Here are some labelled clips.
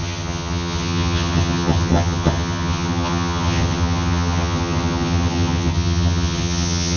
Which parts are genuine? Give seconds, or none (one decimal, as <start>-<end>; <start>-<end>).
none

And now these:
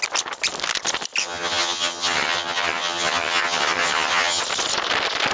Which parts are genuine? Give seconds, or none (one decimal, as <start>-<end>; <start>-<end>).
0.0-1.2; 4.4-5.3

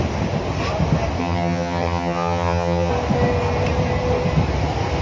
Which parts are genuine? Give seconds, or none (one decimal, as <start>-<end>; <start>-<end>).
0.0-1.2; 2.9-5.0

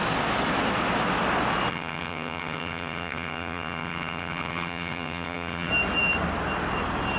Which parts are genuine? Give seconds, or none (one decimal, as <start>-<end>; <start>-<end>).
0.0-1.7; 5.7-7.2